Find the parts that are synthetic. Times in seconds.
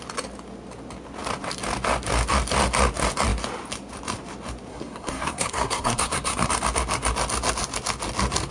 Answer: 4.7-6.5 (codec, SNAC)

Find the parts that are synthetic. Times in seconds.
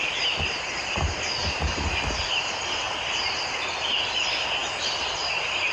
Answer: none